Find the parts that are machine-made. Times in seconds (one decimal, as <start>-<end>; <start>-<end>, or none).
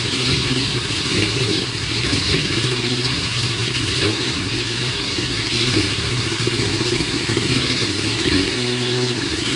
0.0-9.6